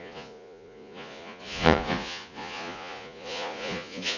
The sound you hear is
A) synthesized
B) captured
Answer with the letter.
A